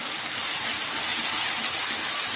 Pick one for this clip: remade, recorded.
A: recorded